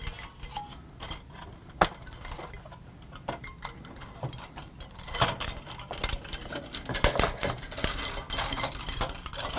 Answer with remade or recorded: recorded